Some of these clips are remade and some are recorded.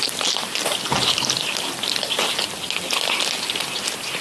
recorded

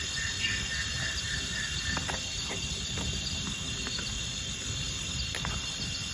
recorded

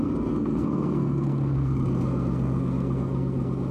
remade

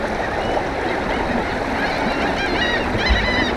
recorded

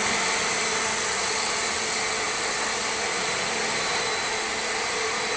recorded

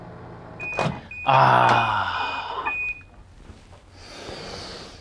recorded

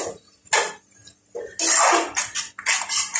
recorded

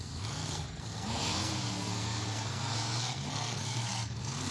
remade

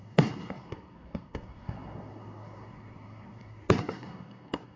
remade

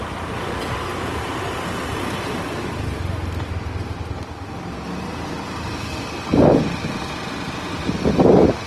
recorded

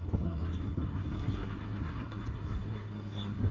remade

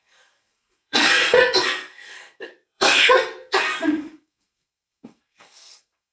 remade